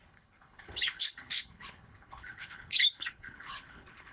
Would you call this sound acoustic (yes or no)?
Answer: no